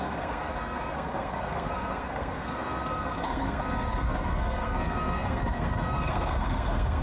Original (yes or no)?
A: no